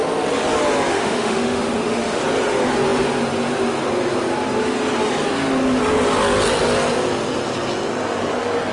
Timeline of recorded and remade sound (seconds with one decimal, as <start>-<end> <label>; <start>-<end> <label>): 0.0-0.9 recorded; 0.9-2.2 remade; 2.2-8.7 recorded